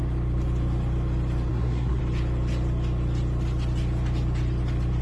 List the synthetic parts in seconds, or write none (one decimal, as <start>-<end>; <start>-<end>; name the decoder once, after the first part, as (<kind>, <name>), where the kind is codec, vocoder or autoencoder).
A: 1.5-2.0 (codec, SNAC)